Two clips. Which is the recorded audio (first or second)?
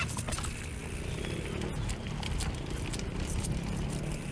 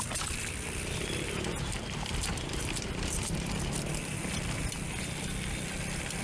first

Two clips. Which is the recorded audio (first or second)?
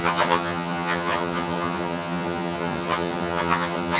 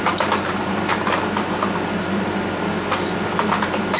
second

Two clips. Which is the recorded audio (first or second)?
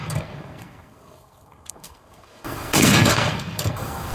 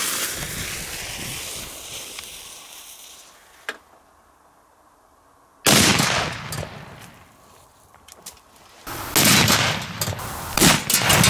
second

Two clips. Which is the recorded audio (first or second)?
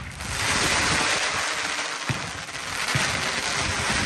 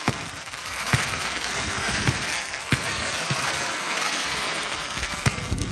first